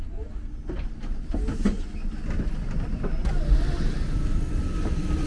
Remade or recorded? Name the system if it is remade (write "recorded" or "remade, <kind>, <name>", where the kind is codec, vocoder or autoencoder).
recorded